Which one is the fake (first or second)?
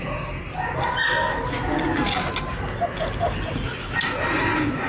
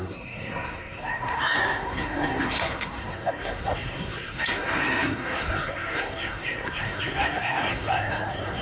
second